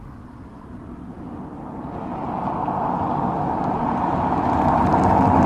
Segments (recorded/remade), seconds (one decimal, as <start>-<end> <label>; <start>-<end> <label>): 0.0-5.5 recorded